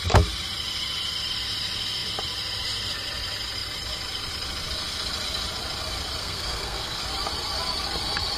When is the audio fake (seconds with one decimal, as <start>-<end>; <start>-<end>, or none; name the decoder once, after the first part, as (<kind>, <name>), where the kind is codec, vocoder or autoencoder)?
6.2-7.0 (codec, SNAC)